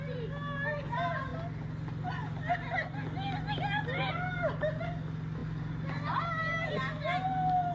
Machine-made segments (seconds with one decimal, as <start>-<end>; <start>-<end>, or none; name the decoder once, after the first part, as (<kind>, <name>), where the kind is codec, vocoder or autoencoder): none